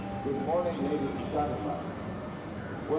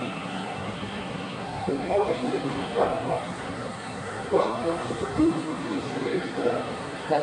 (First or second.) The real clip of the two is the first